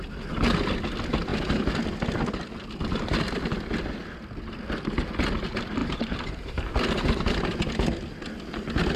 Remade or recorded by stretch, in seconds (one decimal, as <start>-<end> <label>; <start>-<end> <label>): 0.0-5.8 recorded; 5.8-7.4 remade; 7.4-9.0 recorded